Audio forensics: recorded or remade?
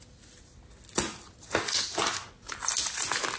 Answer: recorded